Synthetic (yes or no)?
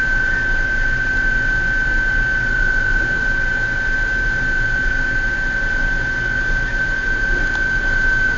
no